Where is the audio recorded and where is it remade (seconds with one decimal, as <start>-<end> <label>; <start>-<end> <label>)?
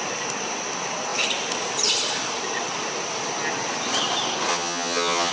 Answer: 0.0-4.5 recorded; 4.5-5.3 remade